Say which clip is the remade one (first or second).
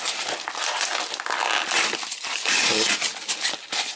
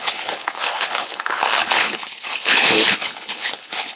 second